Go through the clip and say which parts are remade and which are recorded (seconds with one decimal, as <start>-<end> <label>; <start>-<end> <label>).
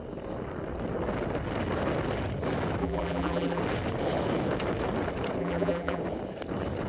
0.0-2.8 recorded; 2.8-3.6 remade; 3.6-5.4 recorded; 5.4-6.0 remade; 6.0-6.9 recorded